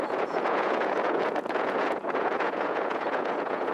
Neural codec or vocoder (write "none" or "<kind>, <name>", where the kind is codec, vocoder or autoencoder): vocoder, Vocos